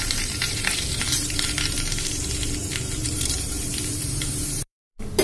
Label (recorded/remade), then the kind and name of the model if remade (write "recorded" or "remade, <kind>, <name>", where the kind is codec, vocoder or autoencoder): remade, vocoder, BigVGAN v2